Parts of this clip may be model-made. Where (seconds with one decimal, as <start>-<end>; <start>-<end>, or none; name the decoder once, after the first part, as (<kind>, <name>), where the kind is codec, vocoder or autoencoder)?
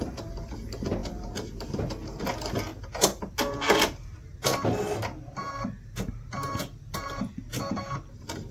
none